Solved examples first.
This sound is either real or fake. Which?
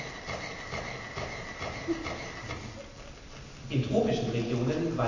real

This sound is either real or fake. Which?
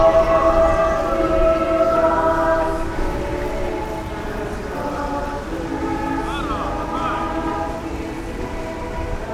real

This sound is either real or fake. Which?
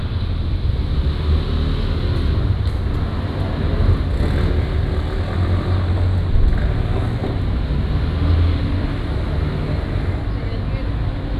real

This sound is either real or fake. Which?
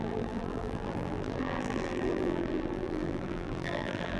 fake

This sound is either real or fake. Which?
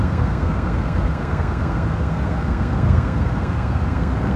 fake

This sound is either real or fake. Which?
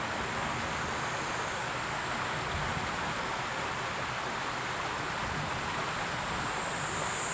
real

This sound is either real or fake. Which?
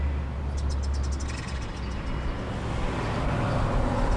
real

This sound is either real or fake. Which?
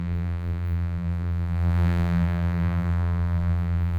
fake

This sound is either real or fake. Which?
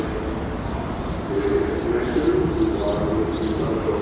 real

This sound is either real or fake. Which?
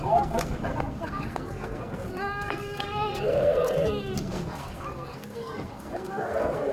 fake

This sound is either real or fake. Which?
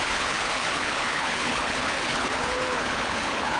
fake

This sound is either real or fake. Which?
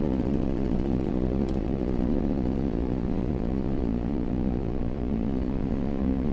fake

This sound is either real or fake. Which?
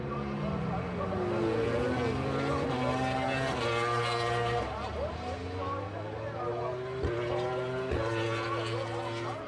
real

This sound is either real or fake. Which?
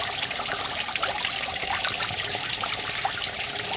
real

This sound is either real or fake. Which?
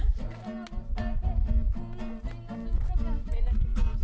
real